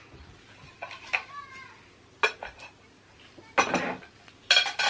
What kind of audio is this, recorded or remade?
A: recorded